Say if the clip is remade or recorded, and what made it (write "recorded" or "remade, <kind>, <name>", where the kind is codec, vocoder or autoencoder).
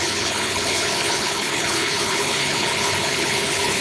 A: remade, codec, HILCodec